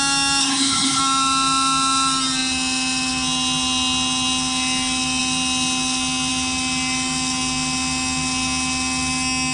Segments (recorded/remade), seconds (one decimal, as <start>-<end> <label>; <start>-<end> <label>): 0.0-0.4 recorded; 0.4-1.0 remade; 1.0-9.5 recorded